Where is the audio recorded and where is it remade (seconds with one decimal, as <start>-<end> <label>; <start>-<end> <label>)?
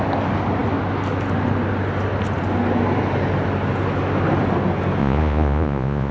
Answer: 0.0-5.0 recorded; 5.0-6.1 remade